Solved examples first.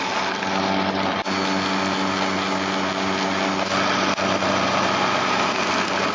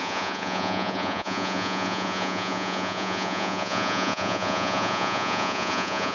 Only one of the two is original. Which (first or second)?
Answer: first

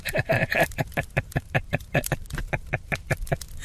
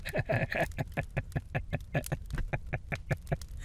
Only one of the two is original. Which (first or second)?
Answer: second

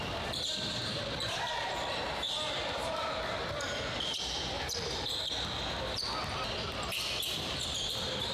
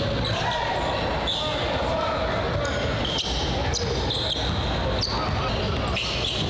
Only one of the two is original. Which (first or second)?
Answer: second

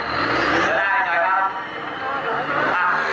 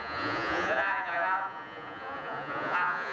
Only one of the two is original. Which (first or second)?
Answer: first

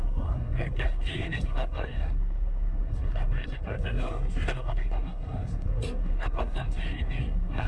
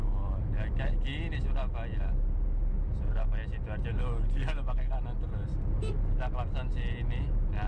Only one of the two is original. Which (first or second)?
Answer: second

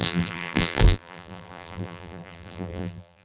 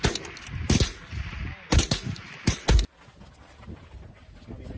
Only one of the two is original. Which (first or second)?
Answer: second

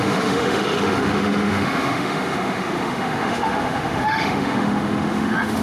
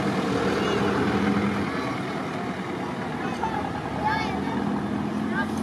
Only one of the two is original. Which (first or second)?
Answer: second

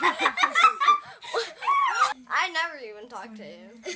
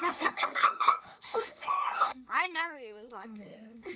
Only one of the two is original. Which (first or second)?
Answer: first